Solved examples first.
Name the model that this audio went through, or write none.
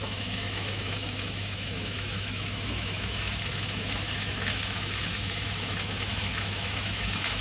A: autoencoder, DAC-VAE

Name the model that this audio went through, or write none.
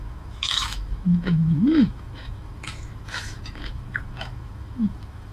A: autoencoder, DAC-VAE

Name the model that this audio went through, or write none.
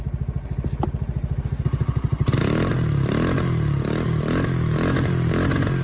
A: none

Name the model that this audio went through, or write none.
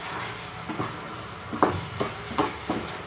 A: none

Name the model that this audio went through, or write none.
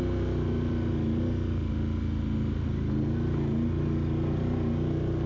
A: none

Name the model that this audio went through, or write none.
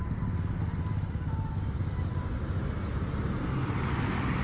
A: none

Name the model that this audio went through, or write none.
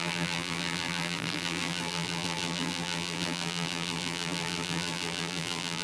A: vocoder, BigVGAN v2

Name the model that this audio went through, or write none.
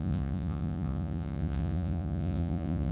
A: vocoder, Vocos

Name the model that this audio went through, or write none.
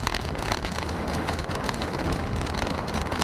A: autoencoder, DAC-VAE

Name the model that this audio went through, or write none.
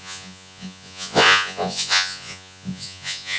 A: vocoder, Vocos